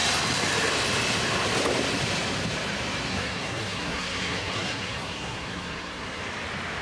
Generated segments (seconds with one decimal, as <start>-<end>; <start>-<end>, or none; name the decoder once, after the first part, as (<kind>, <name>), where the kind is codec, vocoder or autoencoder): 3.1-6.2 (codec, SNAC)